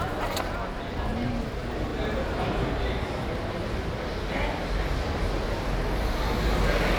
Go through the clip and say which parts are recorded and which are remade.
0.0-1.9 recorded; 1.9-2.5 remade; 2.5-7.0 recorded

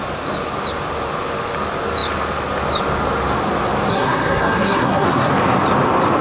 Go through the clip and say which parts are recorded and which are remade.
0.0-3.9 recorded; 3.9-5.3 remade; 5.3-6.2 recorded

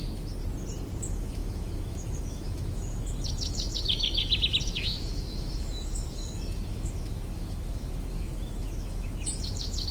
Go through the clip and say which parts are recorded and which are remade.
0.0-0.4 remade; 0.4-1.0 recorded; 1.0-9.9 remade

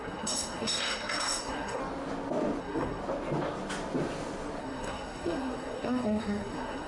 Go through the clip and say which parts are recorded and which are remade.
0.0-1.8 remade; 1.8-2.6 recorded; 2.6-3.0 remade; 3.0-4.6 recorded; 4.6-6.9 remade

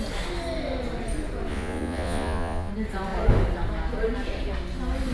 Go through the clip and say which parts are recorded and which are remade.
0.0-1.5 recorded; 1.5-2.7 remade; 2.7-5.1 recorded

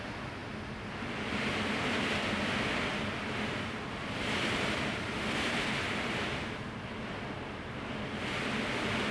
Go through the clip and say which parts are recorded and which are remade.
0.0-2.9 recorded; 2.9-7.2 remade; 7.2-9.1 recorded

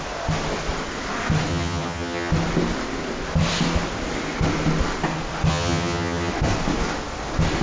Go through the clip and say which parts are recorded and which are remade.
0.0-1.5 recorded; 1.5-2.3 remade; 2.3-5.5 recorded; 5.5-6.3 remade; 6.3-7.6 recorded